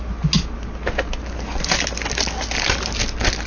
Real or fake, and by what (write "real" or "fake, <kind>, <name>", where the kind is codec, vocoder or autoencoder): real